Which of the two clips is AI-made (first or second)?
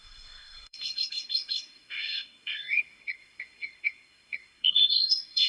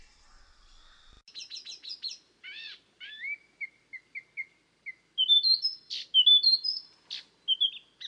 first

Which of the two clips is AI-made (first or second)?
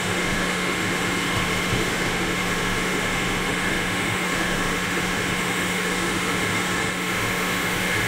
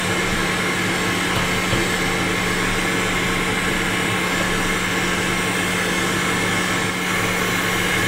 first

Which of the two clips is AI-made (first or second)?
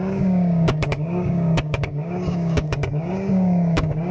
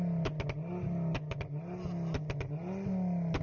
first